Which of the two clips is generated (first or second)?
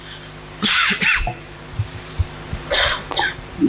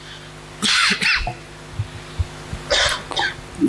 first